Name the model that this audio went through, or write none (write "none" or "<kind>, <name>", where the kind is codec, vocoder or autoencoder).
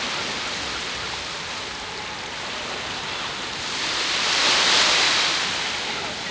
none